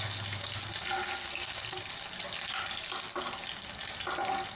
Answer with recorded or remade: recorded